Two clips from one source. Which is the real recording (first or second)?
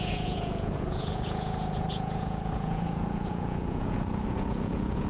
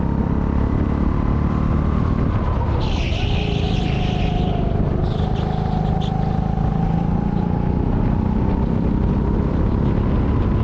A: second